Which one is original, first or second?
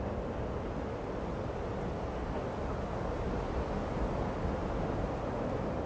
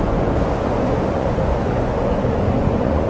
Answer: first